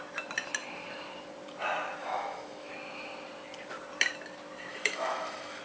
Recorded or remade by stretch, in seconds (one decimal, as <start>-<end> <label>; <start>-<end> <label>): 0.0-2.0 recorded; 2.0-2.7 remade; 2.7-4.7 recorded; 4.7-5.6 remade